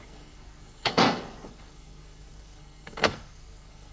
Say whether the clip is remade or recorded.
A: remade